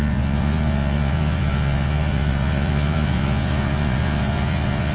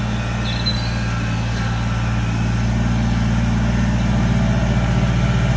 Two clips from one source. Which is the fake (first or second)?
first